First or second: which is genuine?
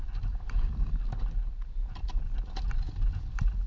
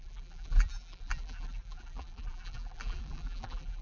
first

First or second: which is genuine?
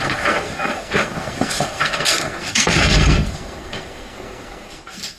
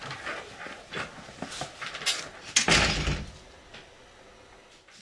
second